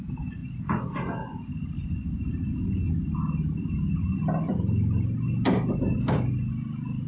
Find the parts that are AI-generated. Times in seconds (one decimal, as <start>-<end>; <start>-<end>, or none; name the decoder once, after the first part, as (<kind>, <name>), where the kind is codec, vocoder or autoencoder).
none